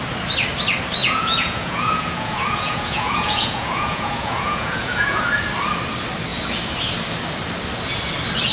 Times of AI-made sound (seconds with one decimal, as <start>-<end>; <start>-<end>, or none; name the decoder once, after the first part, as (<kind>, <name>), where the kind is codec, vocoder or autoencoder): 1.0-5.2 (vocoder, Vocos)